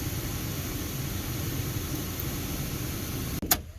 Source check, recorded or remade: recorded